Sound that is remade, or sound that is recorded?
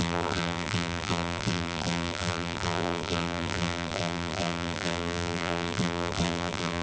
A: remade